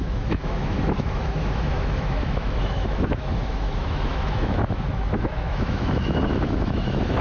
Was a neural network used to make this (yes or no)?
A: yes